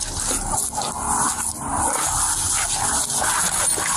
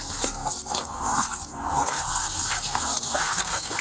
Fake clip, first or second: second